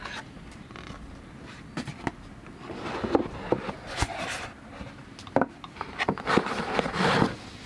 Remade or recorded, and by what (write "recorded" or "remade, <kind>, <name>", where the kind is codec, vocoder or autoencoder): recorded